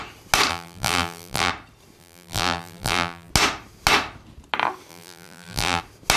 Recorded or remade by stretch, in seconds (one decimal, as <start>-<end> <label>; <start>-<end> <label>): 0.0-0.5 recorded; 0.5-1.5 remade; 1.5-2.0 recorded; 2.0-3.3 remade; 3.3-4.9 recorded; 4.9-5.8 remade; 5.8-6.2 recorded